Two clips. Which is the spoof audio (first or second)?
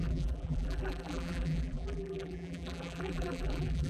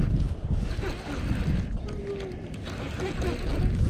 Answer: first